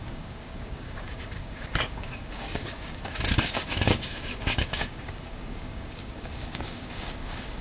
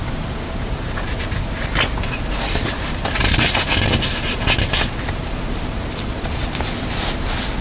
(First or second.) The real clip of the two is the second